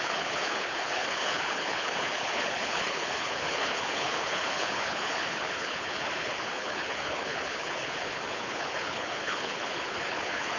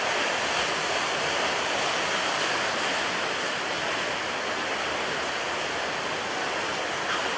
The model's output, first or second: first